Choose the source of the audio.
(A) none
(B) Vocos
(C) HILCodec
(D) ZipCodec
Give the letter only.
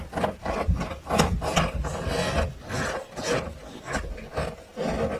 A